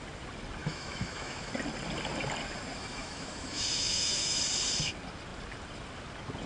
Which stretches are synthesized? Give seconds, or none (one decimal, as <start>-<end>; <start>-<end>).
0.6-1.5; 2.8-4.4

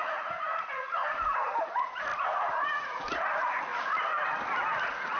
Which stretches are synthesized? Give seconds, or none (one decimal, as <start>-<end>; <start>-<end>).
0.0-1.0; 1.7-3.7; 4.8-5.2